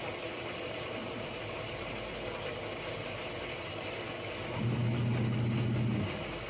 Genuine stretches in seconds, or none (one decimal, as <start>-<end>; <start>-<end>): 0.0-1.0; 2.1-6.5